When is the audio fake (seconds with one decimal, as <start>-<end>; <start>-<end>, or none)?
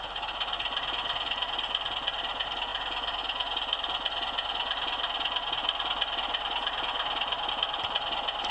none